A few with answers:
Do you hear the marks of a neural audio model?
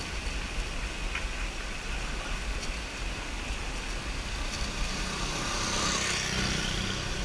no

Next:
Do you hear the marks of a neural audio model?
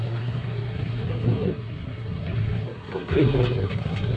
yes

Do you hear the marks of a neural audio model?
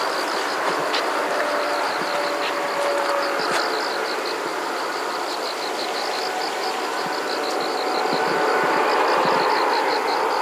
no